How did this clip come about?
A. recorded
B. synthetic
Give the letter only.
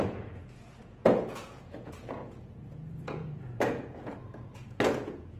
B